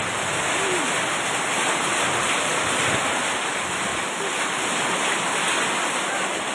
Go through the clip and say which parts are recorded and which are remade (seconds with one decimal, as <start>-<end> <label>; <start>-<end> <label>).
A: 0.0-6.5 recorded